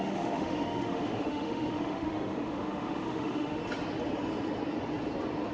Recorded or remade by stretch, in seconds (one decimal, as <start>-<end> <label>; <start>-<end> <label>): 0.0-3.6 remade; 3.6-5.5 recorded